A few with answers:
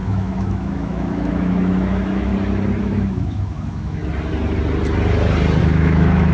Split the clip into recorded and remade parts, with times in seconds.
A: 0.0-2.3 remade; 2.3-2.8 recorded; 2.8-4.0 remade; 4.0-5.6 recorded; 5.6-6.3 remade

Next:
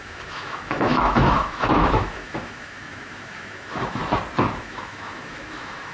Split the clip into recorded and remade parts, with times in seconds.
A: 0.0-4.0 remade; 4.0-4.6 recorded; 4.6-5.9 remade

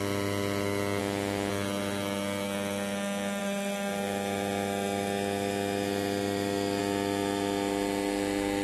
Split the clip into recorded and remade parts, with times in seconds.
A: 0.0-1.0 remade; 1.0-1.5 recorded; 1.5-8.6 remade

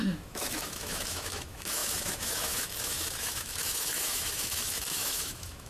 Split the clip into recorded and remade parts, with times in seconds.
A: 0.0-5.7 remade

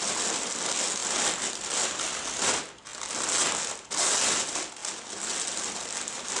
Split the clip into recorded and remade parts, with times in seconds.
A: 0.0-6.4 recorded

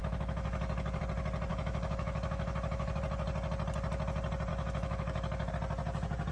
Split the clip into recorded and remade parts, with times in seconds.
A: 0.0-1.0 remade; 1.0-1.5 recorded; 1.5-3.0 remade; 3.0-4.5 recorded; 4.5-5.5 remade; 5.5-6.3 recorded

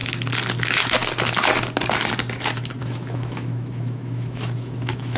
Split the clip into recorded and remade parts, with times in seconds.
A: 0.0-2.8 recorded; 2.8-5.2 remade